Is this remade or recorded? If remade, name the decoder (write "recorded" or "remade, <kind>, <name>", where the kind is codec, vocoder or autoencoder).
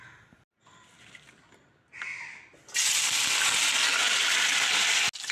recorded